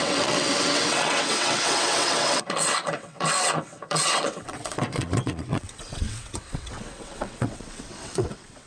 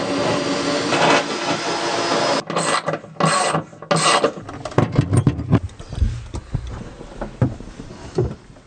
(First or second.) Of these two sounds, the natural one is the second